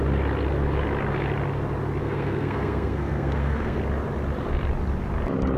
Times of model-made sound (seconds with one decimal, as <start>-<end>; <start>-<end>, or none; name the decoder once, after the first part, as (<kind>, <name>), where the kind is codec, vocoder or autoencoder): 2.0-3.8 (codec, SNAC)